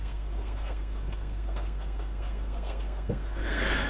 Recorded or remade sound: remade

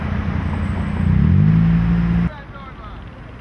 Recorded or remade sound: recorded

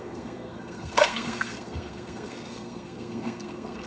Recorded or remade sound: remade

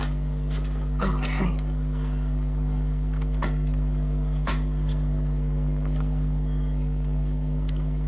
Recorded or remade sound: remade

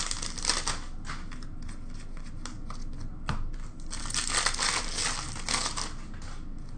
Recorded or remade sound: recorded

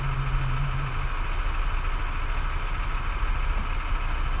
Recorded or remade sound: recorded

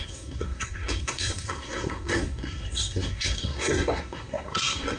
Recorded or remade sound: remade